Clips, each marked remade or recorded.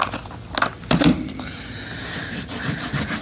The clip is recorded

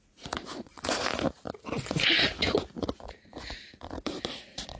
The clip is remade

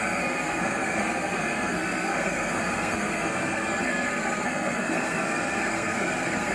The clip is remade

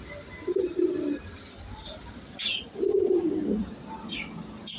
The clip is recorded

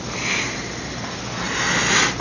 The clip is recorded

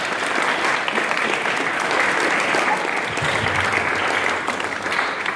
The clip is recorded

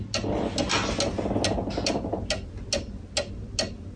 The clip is recorded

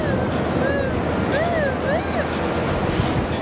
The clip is recorded